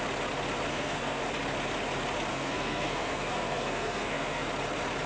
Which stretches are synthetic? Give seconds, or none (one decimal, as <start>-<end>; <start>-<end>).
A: 0.7-1.2; 2.3-4.5